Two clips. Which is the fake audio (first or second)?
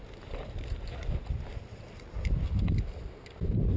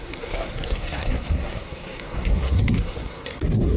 second